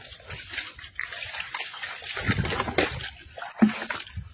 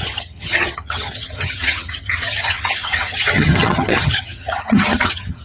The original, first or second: first